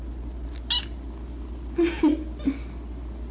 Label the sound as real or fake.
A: real